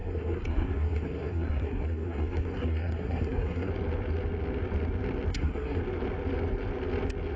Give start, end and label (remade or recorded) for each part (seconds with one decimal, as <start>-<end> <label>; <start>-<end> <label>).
0.0-3.7 remade; 3.7-5.3 recorded; 5.3-5.8 remade; 5.8-7.4 recorded